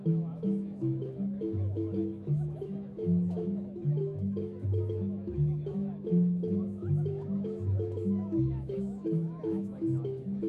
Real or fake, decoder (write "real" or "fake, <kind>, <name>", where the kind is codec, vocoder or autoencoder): fake, autoencoder, DAC-VAE